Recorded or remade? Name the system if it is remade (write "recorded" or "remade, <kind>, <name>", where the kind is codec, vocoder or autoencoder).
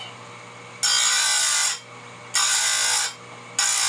recorded